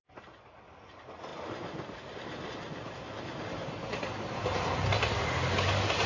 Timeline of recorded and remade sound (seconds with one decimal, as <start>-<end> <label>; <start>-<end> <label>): 0.0-6.1 recorded